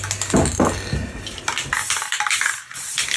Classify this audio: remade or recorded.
recorded